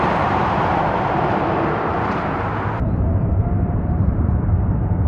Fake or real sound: fake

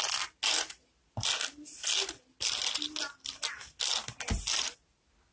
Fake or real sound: real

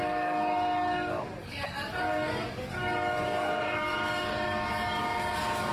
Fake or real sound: fake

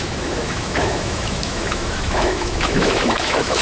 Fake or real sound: fake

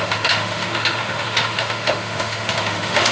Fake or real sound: fake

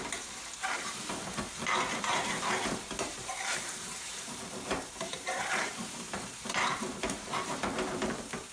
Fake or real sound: fake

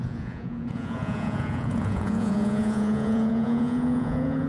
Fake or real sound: fake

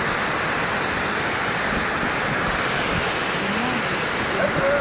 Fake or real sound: real